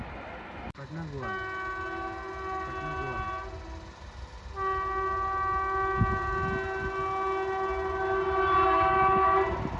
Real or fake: real